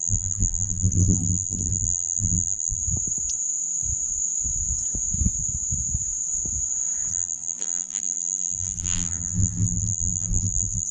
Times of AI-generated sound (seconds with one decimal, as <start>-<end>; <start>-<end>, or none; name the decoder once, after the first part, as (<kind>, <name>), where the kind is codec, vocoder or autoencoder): 0.0-2.8 (vocoder, BigVGAN v2); 7.1-10.9